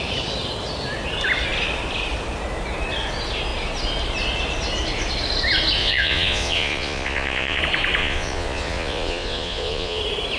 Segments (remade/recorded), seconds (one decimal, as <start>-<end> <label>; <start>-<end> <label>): 0.0-5.8 recorded; 5.8-7.6 remade; 7.6-8.0 recorded; 8.0-10.0 remade; 10.0-10.4 recorded